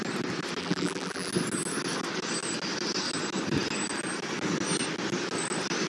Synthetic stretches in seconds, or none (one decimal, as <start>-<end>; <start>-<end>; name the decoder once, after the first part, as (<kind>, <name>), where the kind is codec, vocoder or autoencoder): 0.6-1.3 (vocoder, BigVGAN v2)